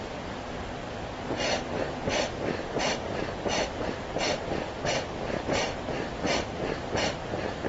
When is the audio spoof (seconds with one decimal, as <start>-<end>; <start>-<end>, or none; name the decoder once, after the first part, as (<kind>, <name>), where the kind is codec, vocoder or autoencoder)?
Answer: none